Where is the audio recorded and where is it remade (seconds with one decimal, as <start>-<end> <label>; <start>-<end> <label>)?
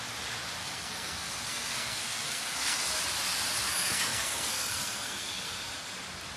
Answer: 0.0-0.6 recorded; 0.6-2.9 remade; 2.9-3.7 recorded; 3.7-5.5 remade; 5.5-6.4 recorded